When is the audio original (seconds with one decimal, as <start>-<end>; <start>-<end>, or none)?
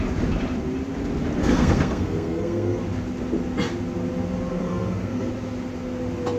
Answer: 0.0-1.4; 2.8-4.5; 5.3-6.4